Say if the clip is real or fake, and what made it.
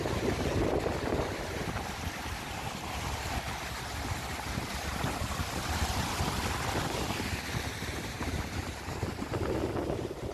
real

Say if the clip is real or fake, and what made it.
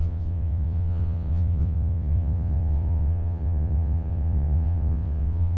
fake, vocoder, WaveNeXt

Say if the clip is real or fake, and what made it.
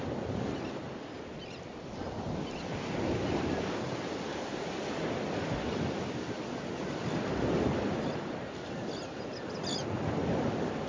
real